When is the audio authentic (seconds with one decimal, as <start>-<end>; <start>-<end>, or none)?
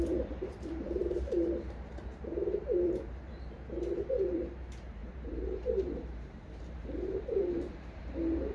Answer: none